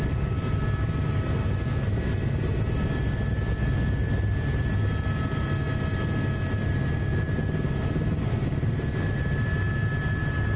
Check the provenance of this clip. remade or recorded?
recorded